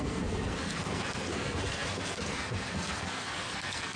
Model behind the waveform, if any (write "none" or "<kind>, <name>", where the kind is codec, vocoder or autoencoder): codec, SNAC